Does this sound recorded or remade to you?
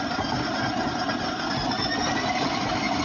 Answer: recorded